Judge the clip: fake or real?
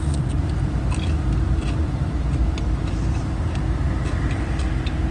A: real